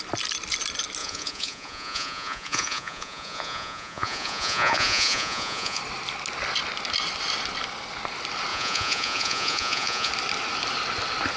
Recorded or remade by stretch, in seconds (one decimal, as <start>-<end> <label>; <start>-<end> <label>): 0.0-1.0 recorded; 1.0-5.8 remade; 5.8-8.5 recorded; 8.5-10.1 remade; 10.1-11.4 recorded